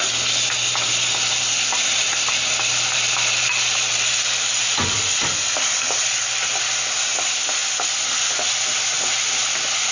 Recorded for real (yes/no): yes